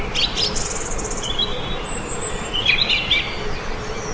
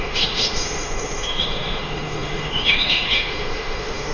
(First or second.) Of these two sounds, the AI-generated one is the second